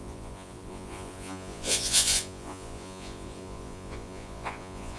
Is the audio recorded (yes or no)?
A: no